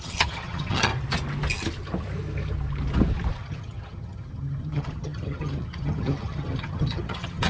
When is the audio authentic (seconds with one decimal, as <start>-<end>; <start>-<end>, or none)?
0.9-3.4